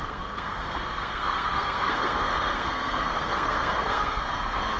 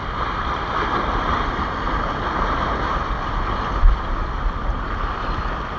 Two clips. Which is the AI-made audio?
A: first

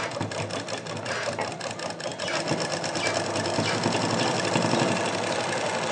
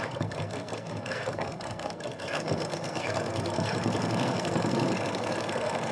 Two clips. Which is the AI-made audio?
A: second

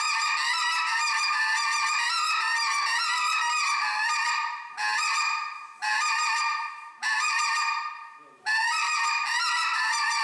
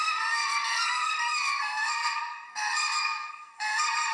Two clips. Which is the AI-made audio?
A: second